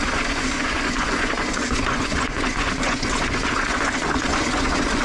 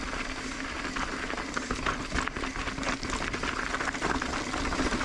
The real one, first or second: second